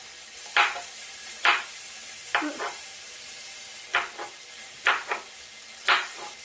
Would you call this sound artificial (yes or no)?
yes